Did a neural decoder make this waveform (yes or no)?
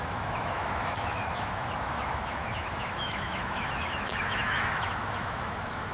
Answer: yes